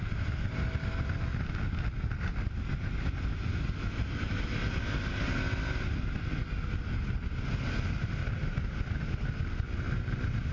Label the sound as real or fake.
real